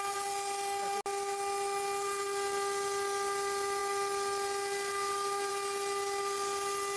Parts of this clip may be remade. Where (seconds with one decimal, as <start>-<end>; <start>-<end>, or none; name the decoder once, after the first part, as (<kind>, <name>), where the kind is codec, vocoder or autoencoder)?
none